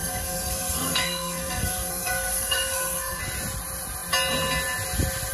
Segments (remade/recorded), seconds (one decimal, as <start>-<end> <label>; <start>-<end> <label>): 0.0-3.2 remade; 3.2-5.3 recorded